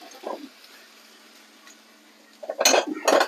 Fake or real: real